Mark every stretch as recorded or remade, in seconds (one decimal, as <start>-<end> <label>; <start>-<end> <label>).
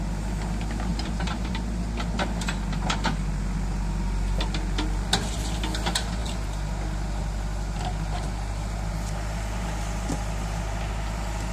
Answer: 0.0-0.9 recorded; 0.9-1.5 remade; 1.5-11.5 recorded